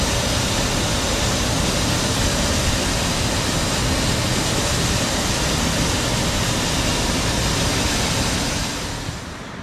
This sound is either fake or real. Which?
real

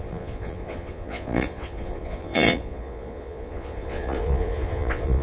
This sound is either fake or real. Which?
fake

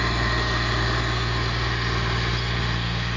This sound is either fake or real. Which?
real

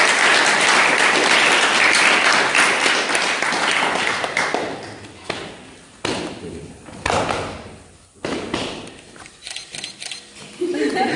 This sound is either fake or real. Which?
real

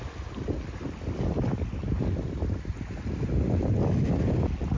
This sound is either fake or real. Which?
real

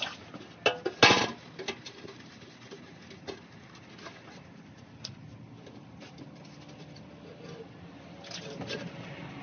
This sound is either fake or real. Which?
real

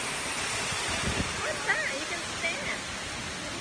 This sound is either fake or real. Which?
real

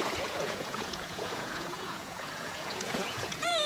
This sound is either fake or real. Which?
fake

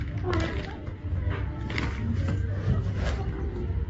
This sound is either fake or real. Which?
real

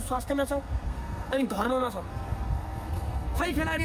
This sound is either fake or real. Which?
fake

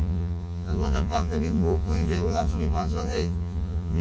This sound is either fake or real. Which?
fake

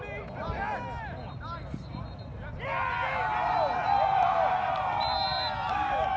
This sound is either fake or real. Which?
real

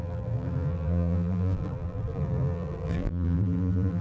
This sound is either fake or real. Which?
fake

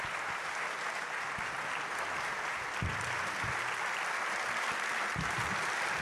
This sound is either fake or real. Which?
real